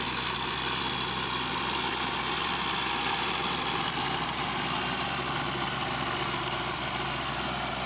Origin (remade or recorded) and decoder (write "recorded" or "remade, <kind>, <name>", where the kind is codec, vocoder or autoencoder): recorded